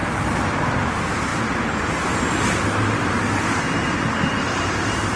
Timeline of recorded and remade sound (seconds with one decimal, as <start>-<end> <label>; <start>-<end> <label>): 0.0-1.3 remade; 1.3-2.6 recorded; 2.6-5.2 remade